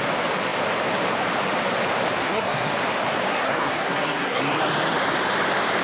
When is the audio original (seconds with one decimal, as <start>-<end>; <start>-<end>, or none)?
0.0-2.2; 2.7-3.3; 4.4-5.8